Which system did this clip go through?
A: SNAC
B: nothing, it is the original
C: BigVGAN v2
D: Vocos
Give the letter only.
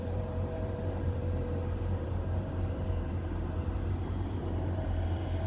C